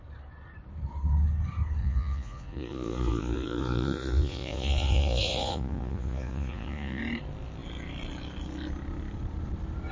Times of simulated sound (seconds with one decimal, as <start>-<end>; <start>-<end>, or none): 1.8-7.0